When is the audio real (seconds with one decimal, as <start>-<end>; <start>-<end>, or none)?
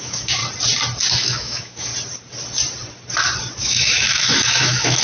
0.4-1.1; 1.9-3.6